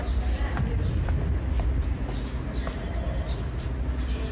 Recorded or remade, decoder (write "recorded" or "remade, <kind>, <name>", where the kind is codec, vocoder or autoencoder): recorded